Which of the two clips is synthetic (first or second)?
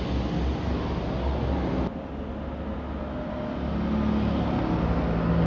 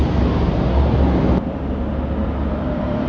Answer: second